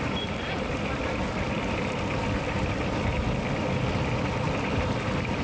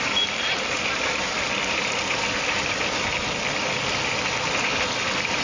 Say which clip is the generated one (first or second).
first